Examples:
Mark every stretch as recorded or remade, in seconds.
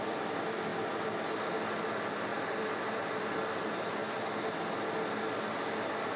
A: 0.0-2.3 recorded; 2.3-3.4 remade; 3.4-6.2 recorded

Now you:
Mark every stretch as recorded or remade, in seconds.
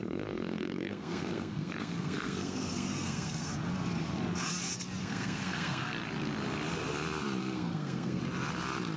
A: 0.0-3.5 remade; 3.5-5.0 recorded; 5.0-5.9 remade; 5.9-7.4 recorded; 7.4-8.2 remade; 8.2-9.0 recorded